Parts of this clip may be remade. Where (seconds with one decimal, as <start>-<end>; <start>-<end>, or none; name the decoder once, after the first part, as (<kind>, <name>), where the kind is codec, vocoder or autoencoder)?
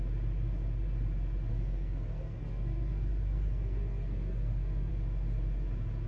1.5-4.9 (codec, SNAC)